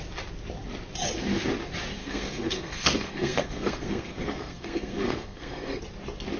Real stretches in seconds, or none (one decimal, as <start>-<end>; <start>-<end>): 0.0-2.0; 5.8-6.4

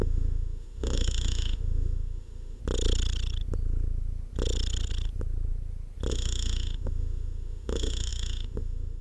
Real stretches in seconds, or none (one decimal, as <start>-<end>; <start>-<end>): 2.6-6.1